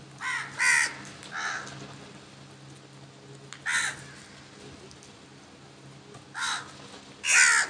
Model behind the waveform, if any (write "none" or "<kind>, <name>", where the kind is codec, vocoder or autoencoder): none